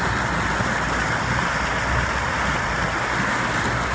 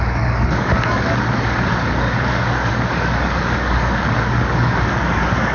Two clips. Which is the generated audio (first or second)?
second